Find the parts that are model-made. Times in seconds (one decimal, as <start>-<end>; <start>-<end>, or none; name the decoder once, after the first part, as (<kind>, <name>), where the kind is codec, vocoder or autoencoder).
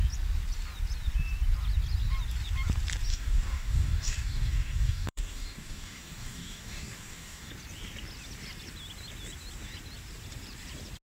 3.1-7.5 (codec, DAC)